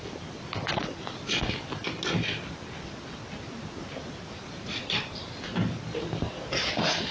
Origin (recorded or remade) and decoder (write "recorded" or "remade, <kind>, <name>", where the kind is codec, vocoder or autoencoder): recorded